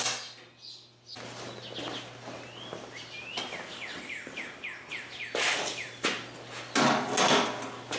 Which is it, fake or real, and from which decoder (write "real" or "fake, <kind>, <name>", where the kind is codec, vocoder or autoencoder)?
real